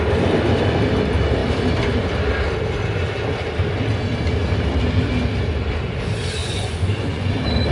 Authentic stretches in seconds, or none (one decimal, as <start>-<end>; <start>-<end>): 0.0-6.4; 7.3-7.7

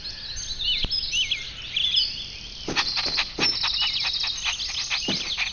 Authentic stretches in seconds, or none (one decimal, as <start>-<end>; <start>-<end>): 0.0-5.5

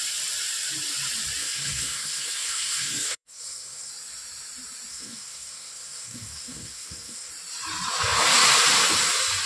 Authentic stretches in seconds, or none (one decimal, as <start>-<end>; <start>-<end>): 0.0-1.4; 3.9-4.9; 7.3-9.5

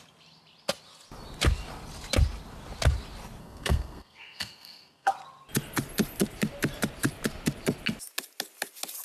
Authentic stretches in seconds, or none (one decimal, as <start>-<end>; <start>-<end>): 0.0-3.4; 5.1-9.0